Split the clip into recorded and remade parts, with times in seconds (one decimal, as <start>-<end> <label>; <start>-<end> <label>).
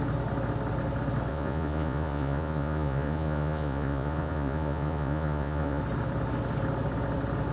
0.0-1.3 recorded; 1.3-5.8 remade; 5.8-7.5 recorded